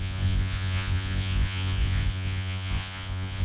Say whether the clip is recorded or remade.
remade